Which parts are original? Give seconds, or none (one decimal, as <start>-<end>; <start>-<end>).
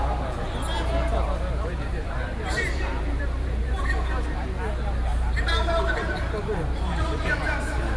0.0-1.1; 3.9-5.1; 7.4-8.0